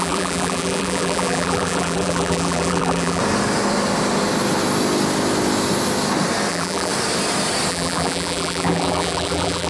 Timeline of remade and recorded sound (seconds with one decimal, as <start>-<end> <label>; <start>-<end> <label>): 0.0-3.2 remade; 3.2-6.5 recorded; 6.5-6.9 remade; 6.9-7.7 recorded; 7.7-9.7 remade